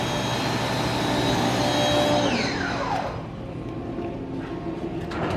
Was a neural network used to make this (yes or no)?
no